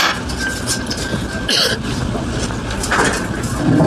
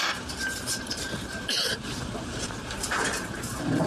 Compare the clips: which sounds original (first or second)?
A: first